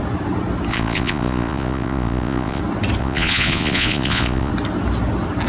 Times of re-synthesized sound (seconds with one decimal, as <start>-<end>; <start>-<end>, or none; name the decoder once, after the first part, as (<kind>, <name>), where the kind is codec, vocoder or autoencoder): 0.7-2.6 (vocoder, Vocos); 3.0-4.5